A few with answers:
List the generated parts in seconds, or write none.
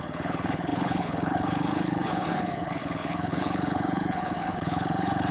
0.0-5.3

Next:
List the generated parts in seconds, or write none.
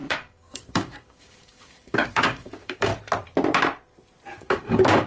0.0-2.9; 4.4-5.1